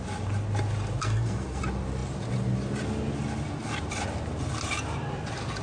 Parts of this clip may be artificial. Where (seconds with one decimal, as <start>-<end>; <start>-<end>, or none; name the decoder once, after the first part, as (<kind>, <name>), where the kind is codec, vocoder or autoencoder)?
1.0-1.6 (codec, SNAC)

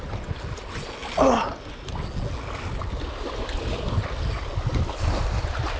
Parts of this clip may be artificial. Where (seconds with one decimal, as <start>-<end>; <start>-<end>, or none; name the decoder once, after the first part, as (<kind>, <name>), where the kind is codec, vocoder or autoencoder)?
none

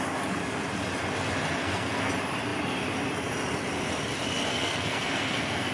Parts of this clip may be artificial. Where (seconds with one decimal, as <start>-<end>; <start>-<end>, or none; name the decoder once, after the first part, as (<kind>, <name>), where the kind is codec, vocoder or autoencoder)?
1.6-2.1 (codec, SNAC); 4.5-5.7

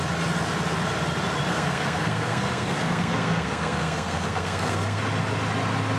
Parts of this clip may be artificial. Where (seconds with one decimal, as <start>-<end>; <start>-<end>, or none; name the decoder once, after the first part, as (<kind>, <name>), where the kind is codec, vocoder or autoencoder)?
1.5-5.0 (codec, SNAC)